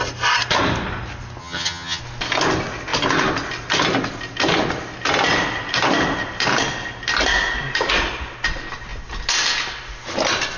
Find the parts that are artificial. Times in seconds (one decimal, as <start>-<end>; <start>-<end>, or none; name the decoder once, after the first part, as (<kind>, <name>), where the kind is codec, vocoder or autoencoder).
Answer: 1.4-2.0 (vocoder, HiFi-GAN)